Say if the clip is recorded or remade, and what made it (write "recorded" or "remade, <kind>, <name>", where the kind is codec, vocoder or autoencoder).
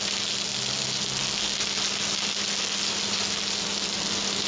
recorded